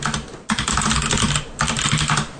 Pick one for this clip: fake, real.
real